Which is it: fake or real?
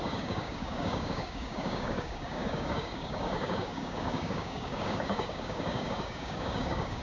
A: fake